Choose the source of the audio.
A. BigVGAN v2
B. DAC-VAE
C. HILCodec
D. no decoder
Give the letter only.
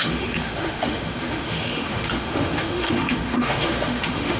B